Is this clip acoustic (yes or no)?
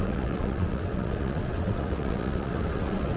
no